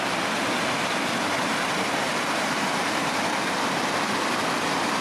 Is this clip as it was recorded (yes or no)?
yes